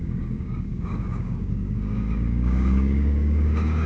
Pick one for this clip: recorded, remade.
remade